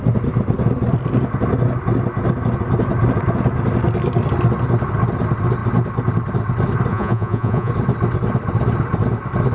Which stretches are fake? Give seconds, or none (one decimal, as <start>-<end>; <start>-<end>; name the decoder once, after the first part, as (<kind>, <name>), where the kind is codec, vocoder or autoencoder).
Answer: 6.9-7.7 (vocoder, Vocos)